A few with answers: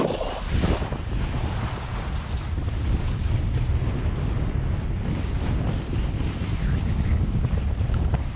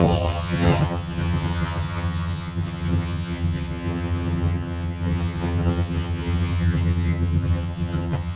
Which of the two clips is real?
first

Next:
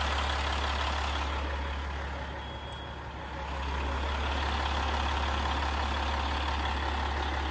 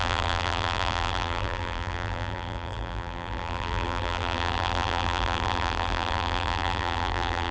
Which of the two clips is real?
first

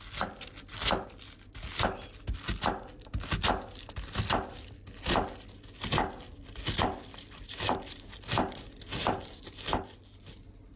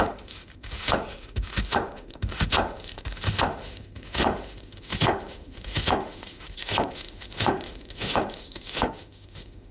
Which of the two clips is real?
first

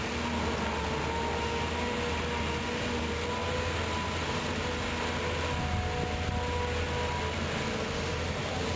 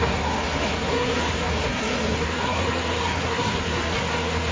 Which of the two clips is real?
first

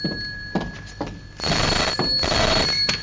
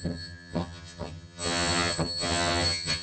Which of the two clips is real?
first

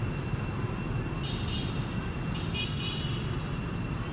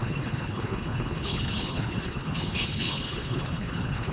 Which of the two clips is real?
first